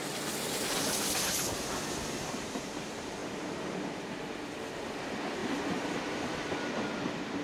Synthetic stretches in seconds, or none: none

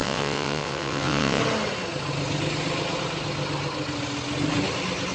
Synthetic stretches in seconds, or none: 0.0-1.4 (vocoder, WaveNeXt)

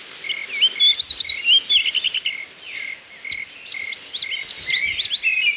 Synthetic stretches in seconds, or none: none